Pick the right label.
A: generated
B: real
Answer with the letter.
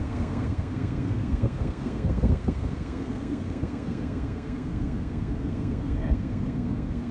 A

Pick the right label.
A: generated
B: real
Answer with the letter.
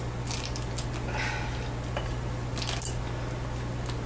B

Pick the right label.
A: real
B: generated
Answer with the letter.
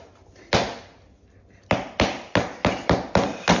A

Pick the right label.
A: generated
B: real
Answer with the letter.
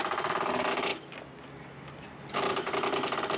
B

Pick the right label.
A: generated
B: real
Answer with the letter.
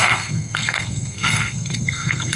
A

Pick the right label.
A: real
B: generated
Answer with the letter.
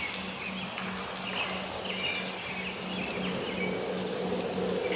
A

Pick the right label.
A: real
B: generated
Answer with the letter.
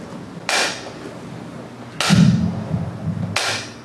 A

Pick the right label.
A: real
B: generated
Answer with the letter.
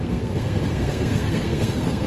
B